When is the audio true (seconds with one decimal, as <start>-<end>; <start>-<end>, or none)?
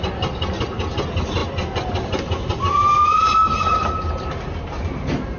0.0-5.4